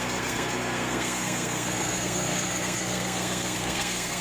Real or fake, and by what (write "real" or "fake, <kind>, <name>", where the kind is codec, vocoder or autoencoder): fake, codec, SNAC